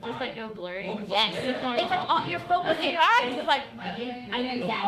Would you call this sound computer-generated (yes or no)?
yes